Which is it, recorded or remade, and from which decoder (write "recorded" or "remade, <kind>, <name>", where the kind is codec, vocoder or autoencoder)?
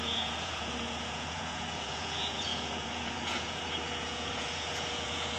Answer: remade, vocoder, Vocos